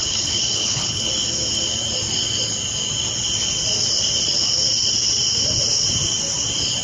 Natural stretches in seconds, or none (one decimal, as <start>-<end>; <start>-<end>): 1.1-6.8